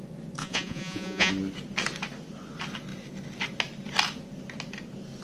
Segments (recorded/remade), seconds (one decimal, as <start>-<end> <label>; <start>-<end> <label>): 0.0-0.4 recorded; 0.4-1.3 remade; 1.3-5.2 recorded